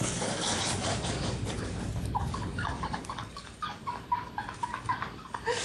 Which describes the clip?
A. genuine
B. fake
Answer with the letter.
B